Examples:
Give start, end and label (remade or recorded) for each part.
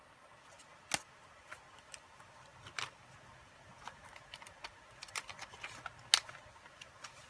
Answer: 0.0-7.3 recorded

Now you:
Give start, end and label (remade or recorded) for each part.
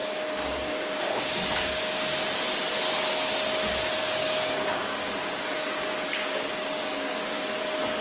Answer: 0.0-2.0 remade; 2.0-4.0 recorded; 4.0-7.6 remade; 7.6-8.0 recorded